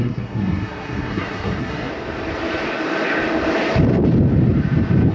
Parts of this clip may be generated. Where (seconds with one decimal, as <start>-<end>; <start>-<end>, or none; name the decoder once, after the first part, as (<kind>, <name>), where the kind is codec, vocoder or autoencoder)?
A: 0.0-1.9 (codec, SNAC)